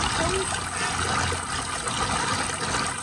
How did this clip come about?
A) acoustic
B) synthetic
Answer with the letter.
A